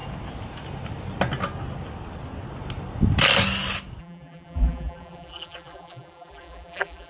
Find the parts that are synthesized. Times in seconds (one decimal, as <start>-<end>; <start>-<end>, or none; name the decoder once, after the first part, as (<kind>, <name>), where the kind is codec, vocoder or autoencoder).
4.0-7.1 (vocoder, BigVGAN v2)